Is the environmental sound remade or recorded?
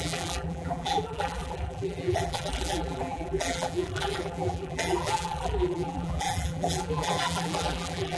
remade